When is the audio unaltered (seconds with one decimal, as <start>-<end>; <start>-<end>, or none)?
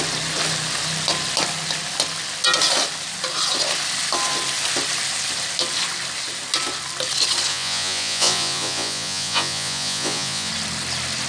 0.0-7.5; 10.5-11.3